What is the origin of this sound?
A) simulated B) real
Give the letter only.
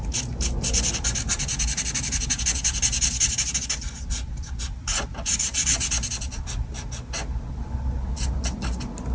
B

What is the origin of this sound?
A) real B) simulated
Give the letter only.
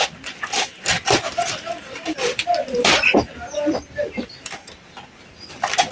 A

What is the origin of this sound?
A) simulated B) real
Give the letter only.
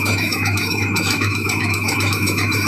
A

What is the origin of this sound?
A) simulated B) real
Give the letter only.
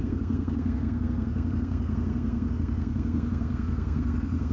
A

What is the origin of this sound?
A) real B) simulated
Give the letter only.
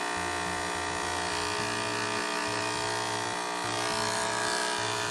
A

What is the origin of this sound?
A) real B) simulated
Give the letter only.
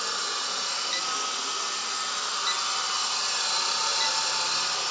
A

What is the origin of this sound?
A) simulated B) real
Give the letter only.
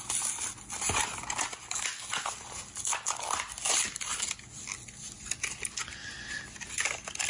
B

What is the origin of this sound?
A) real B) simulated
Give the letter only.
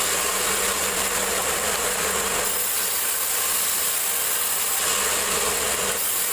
A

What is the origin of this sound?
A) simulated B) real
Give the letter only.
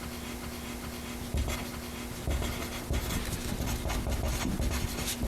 B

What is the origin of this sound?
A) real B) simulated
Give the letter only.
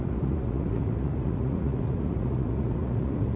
B